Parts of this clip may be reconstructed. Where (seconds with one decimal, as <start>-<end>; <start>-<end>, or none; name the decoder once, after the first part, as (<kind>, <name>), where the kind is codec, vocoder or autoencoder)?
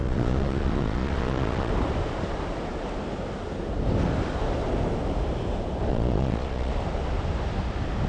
0.0-1.7 (vocoder, Vocos); 5.9-6.7